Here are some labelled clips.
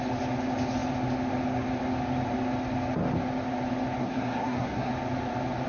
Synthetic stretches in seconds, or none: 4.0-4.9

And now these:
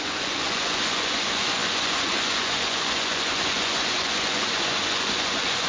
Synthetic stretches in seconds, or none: 0.0-5.7

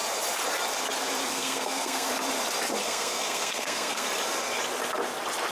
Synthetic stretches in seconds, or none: 1.3-2.1; 2.8-4.1

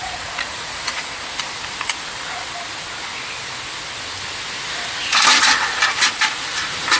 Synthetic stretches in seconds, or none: 0.0-1.1

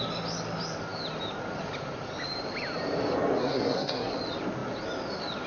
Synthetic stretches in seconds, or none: 3.4-4.1

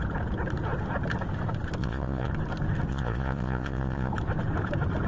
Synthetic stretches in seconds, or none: 1.8-2.3; 2.9-4.1

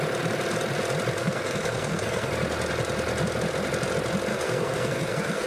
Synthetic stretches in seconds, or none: 1.2-2.3; 4.3-5.5